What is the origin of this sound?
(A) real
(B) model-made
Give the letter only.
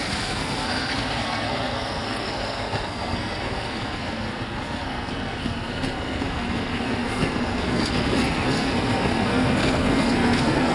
B